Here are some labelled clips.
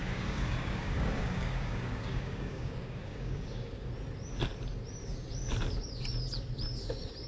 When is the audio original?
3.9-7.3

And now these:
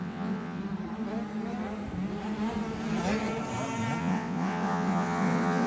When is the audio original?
0.6-4.0